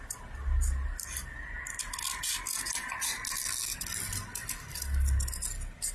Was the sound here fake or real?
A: real